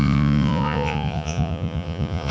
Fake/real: fake